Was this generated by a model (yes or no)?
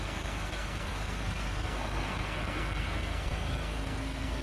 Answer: yes